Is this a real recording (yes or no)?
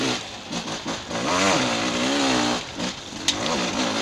yes